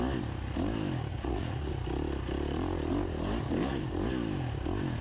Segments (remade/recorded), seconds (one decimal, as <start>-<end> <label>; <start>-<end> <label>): 0.0-1.1 recorded; 1.1-1.7 remade; 1.7-5.0 recorded